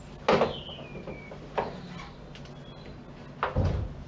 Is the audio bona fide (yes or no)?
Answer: yes